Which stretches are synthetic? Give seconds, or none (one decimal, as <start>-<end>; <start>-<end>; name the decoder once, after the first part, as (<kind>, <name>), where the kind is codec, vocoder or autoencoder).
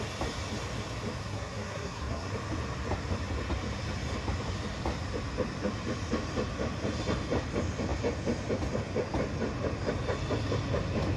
1.2-2.3 (codec, SNAC)